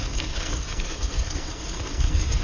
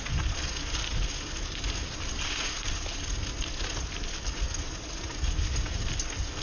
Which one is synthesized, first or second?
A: first